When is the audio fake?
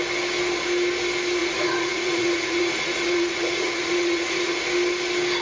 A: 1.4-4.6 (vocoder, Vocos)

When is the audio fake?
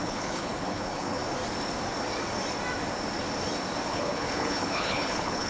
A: 0.0-1.2 (codec, HILCodec); 3.9-5.5